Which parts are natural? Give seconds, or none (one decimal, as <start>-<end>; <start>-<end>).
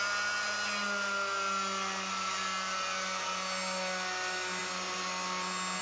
0.0-5.8